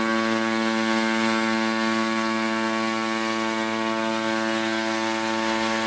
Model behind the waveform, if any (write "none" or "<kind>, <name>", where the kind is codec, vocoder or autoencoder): none